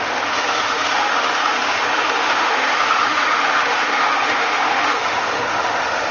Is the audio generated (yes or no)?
yes